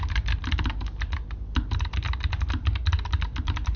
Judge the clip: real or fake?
real